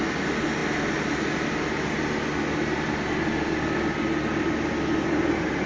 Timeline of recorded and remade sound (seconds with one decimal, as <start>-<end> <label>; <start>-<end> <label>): 0.0-5.7 recorded